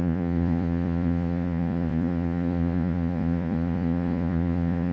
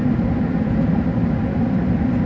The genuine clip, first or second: second